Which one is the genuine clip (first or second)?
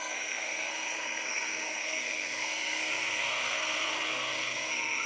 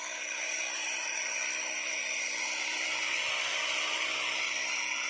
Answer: second